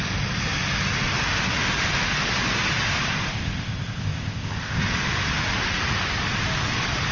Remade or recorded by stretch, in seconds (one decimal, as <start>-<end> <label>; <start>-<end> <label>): 0.0-3.3 recorded; 3.3-4.8 remade; 4.8-7.1 recorded